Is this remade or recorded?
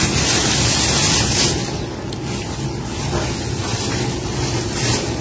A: recorded